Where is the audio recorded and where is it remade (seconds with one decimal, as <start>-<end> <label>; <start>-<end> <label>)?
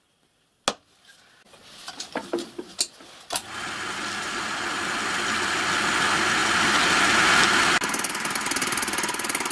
0.0-9.5 recorded